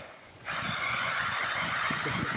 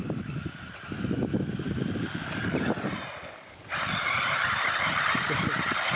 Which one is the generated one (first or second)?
first